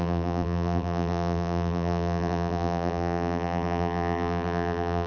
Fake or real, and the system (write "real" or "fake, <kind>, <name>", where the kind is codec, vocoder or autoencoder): fake, vocoder, BigVGAN v2